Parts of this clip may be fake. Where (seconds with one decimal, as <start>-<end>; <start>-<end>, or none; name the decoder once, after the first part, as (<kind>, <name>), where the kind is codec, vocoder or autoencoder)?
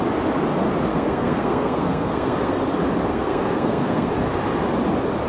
0.9-2.6 (codec, SNAC); 3.1-4.1